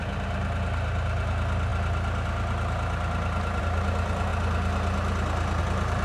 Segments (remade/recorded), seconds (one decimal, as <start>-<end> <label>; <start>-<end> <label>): 0.0-6.0 recorded